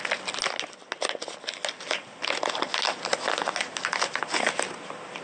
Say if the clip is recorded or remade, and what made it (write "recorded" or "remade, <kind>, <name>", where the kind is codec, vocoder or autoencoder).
recorded